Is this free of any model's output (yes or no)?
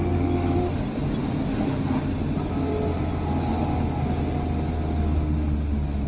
yes